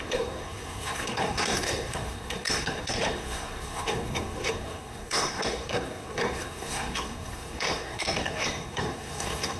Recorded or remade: remade